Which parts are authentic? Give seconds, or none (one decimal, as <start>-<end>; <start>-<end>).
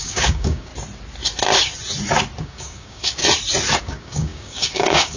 0.7-2.4; 3.2-3.8